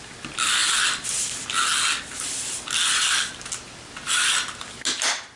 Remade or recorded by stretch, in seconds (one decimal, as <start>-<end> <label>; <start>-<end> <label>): 0.0-5.4 recorded